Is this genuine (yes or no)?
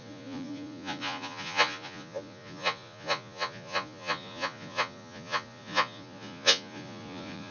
no